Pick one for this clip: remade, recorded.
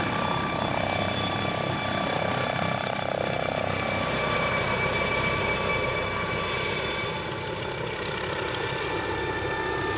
recorded